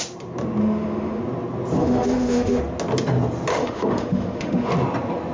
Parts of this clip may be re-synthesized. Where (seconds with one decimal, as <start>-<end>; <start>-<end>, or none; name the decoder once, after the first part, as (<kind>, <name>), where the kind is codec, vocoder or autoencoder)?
0.6-1.2 (autoencoder, DAC-VAE); 1.8-2.6; 3.5-4.7